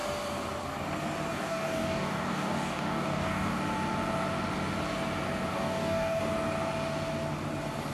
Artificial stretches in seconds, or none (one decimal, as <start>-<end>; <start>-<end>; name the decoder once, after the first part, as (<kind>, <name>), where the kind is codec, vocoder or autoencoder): 1.3-3.6 (codec, DAC); 5.5-6.2